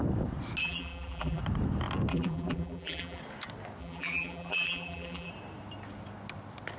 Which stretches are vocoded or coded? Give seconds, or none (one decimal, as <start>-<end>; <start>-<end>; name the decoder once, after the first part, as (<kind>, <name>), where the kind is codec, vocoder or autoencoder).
0.6-1.4 (vocoder, BigVGAN v2); 2.1-3.2; 3.8-5.3